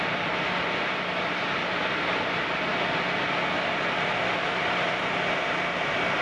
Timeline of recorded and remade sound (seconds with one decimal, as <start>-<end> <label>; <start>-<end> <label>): 0.0-6.2 recorded